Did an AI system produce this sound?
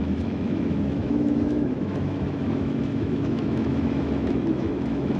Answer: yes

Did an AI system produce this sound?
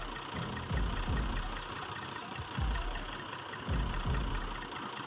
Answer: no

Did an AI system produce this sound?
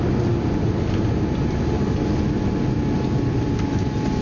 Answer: no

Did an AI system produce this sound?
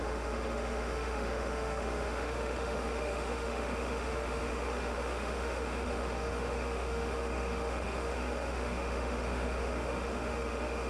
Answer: yes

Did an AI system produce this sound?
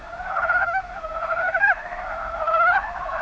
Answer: yes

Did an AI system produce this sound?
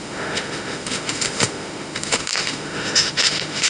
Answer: yes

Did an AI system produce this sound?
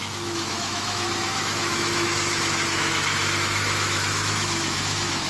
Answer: yes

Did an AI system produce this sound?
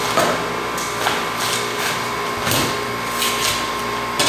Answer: no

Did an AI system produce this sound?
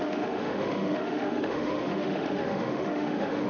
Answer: yes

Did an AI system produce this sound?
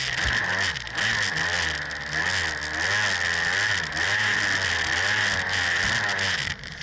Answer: no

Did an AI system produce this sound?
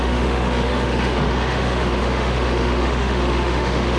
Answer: yes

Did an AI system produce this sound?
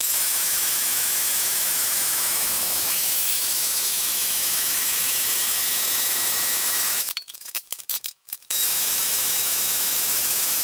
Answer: yes